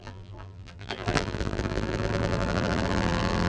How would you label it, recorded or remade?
remade